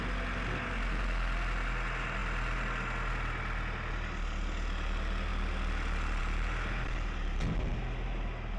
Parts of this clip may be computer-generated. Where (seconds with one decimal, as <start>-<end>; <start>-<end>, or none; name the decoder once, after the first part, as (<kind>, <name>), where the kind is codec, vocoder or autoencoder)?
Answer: none